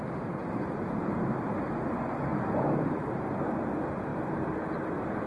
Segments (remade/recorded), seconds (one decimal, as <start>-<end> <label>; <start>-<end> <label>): 0.0-0.4 recorded; 0.4-1.6 remade; 1.6-5.3 recorded